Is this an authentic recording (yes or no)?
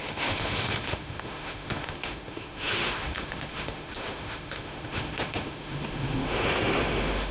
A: no